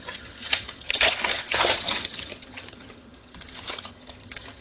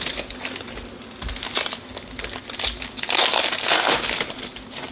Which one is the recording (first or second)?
second